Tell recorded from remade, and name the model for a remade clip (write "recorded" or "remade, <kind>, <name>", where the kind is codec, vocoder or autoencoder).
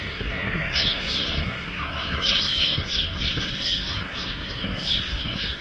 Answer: remade, codec, SNAC